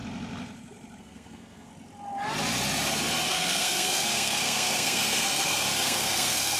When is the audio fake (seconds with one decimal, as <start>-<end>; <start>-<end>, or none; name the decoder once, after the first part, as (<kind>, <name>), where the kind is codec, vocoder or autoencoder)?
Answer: 1.0-1.7 (codec, SNAC); 3.3-6.6